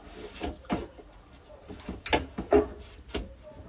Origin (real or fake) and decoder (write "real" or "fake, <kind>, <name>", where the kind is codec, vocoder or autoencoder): real